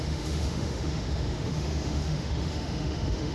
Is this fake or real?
fake